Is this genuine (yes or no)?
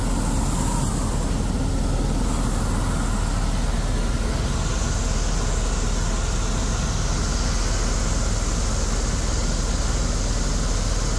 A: yes